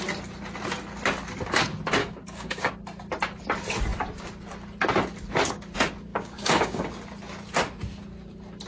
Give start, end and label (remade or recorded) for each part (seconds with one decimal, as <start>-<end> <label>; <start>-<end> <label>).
0.0-2.0 recorded; 2.0-2.7 remade; 2.7-6.1 recorded; 6.1-6.8 remade; 6.8-8.7 recorded

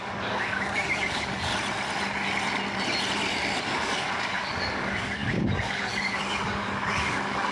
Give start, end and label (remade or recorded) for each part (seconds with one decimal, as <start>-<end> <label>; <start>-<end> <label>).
0.0-1.5 remade; 1.5-3.6 recorded; 3.6-7.5 remade